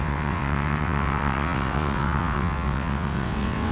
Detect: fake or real fake